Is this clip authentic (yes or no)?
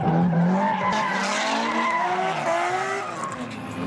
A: yes